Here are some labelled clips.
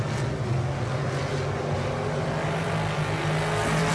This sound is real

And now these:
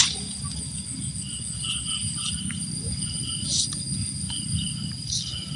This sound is real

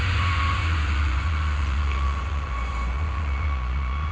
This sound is fake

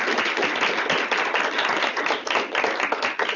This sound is real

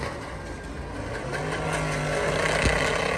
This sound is real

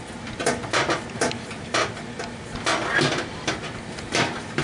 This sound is real